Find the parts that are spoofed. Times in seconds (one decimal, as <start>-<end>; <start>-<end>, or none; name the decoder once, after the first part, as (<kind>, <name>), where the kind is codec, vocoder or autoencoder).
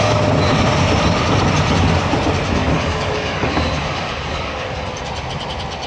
2.6-5.0 (codec, DAC)